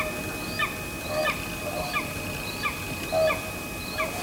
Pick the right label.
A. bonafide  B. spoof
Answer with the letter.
A